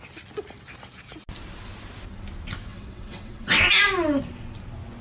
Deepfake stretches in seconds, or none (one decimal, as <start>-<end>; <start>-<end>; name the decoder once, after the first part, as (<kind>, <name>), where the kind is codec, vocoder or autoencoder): 2.7-3.6 (vocoder, WaveNeXt)